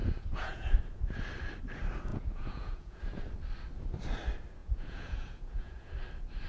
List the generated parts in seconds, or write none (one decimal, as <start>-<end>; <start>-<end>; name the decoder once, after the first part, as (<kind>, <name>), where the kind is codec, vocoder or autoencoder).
0.0-0.7 (vocoder, Vocos); 2.1-3.0; 4.6-5.9